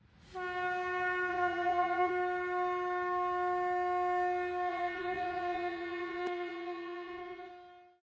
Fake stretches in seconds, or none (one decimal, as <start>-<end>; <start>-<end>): 1.3-2.1; 4.7-7.5